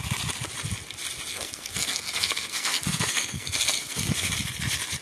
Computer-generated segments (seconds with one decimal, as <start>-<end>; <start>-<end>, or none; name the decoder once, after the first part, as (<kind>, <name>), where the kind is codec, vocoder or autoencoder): 1.3-4.3 (codec, SNAC)